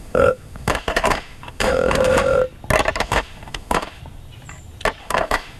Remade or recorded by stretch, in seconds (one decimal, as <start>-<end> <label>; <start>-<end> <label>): 0.0-2.4 remade; 2.4-3.0 recorded; 3.0-4.0 remade; 4.0-5.0 recorded; 5.0-5.6 remade